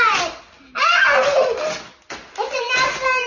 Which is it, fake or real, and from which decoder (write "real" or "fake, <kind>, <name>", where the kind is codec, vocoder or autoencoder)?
real